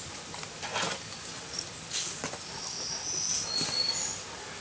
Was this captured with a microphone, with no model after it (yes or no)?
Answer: yes